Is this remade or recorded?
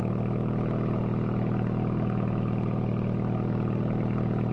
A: recorded